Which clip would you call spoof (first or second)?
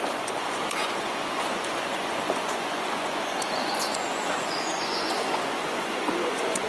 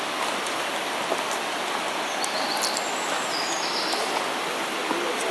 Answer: first